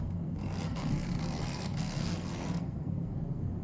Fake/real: fake